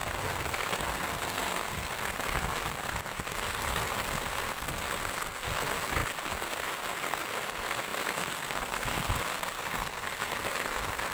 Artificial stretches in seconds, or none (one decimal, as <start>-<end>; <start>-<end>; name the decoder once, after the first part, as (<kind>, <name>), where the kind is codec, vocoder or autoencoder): 0.0-11.1 (codec, SNAC)